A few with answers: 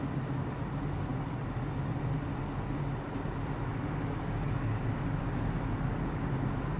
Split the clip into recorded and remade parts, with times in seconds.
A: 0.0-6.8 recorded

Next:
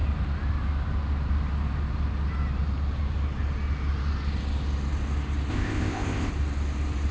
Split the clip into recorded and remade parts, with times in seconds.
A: 0.0-5.5 recorded; 5.5-6.3 remade; 6.3-7.1 recorded

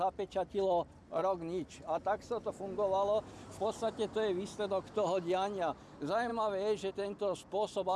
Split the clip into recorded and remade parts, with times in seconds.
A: 0.0-8.0 recorded

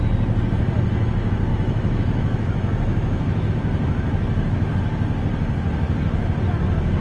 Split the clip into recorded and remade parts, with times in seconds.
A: 0.0-1.5 recorded; 1.5-3.5 remade; 3.5-7.0 recorded

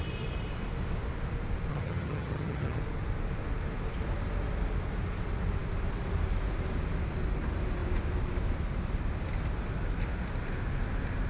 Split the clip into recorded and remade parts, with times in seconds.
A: 0.0-1.7 recorded; 1.7-2.8 remade; 2.8-11.3 recorded

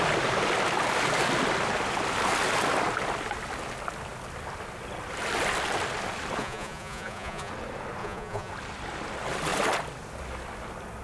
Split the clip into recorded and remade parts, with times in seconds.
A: 0.0-6.4 recorded; 6.4-7.5 remade; 7.5-8.0 recorded; 8.0-8.5 remade; 8.5-11.0 recorded

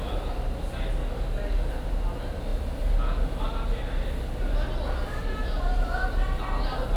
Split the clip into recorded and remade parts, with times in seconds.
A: 0.0-1.0 recorded; 1.0-1.7 remade; 1.7-7.0 recorded